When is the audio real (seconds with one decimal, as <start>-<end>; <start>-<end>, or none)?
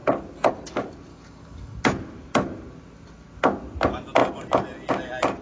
0.0-1.1; 1.8-5.4